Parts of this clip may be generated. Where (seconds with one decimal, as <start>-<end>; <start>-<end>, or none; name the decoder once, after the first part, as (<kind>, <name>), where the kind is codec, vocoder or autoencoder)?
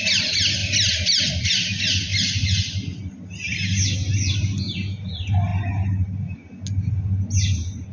none